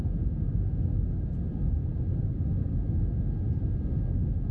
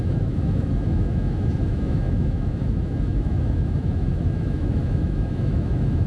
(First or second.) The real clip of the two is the first